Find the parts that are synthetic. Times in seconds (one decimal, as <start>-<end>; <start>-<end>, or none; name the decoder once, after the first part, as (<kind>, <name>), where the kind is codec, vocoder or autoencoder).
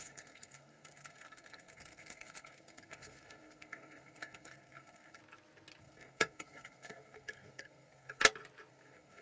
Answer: 0.0-5.2 (codec, SNAC); 5.8-8.2; 8.7-9.2